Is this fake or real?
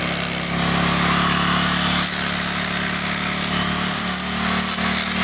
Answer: real